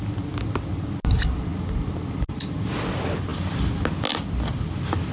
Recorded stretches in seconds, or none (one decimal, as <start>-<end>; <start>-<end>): 0.0-5.1